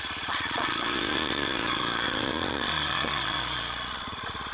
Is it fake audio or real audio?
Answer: fake